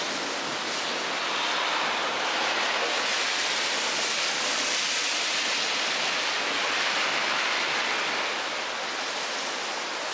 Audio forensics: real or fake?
real